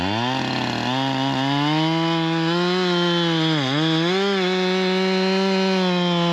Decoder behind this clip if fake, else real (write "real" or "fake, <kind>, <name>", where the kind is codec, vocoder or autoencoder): real